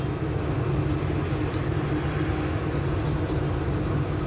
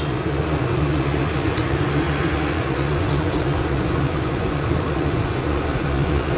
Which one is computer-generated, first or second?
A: second